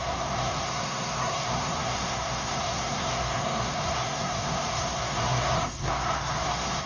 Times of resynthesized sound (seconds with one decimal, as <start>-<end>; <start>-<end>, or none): 0.0-6.9